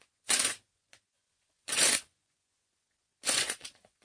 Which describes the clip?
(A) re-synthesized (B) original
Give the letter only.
A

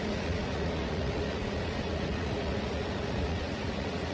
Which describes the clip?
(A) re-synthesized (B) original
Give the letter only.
A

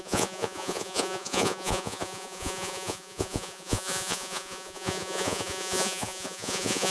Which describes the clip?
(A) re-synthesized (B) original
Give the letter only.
A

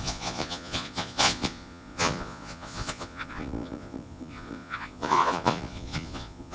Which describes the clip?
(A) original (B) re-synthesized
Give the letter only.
B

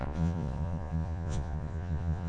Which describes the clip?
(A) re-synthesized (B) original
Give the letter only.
A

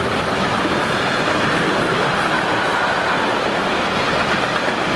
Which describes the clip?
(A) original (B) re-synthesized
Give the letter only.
A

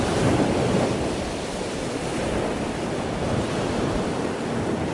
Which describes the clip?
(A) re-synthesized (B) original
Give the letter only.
B